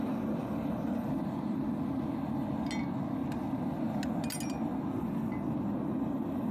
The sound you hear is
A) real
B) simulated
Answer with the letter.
A